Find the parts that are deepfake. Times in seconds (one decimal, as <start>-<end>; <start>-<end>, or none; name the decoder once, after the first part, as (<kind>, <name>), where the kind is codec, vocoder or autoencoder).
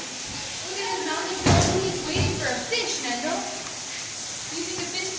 none